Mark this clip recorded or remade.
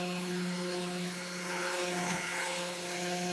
remade